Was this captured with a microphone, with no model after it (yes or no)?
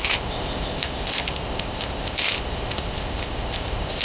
no